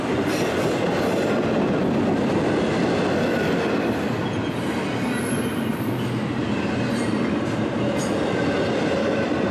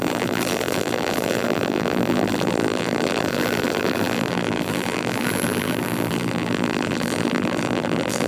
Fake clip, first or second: second